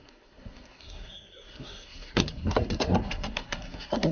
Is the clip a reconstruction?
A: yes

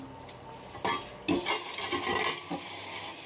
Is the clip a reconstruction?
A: no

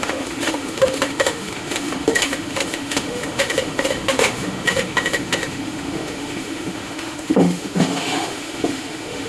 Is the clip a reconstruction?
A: yes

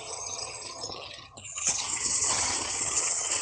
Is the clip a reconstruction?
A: yes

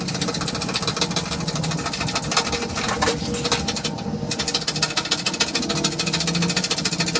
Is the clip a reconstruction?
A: no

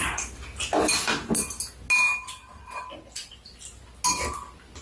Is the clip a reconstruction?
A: no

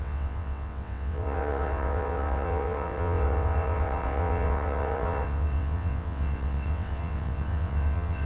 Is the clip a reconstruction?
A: yes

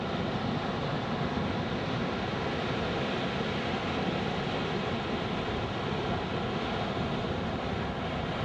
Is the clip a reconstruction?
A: no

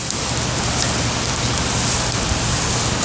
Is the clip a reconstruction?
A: no